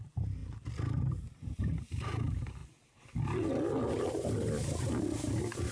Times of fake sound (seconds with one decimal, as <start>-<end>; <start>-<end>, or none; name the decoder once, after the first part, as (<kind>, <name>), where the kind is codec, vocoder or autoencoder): none

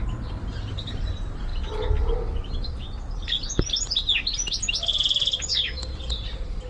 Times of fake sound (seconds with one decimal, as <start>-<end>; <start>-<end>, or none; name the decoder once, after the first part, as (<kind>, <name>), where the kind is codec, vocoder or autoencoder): 0.0-1.5 (vocoder, BigVGAN v2); 4.9-6.7